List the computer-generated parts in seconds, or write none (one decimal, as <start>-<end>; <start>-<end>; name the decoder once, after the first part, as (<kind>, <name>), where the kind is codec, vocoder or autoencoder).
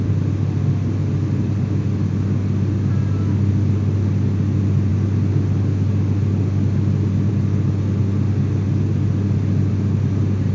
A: none